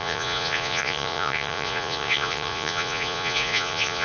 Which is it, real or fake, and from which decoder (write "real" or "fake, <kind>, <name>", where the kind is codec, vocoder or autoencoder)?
fake, vocoder, Vocos